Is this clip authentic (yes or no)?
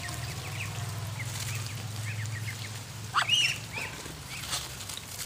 yes